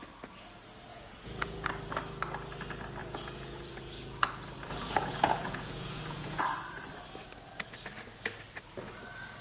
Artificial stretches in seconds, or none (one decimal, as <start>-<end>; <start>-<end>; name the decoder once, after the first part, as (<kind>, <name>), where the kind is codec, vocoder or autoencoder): 0.9-1.7 (vocoder, Vocos); 3.0-3.7; 4.7-6.4